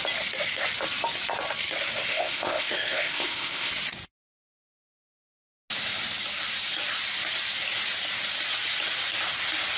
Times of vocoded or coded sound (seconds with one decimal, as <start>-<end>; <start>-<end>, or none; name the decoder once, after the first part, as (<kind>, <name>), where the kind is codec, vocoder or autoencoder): 2.1-3.7 (codec, ZipCodec)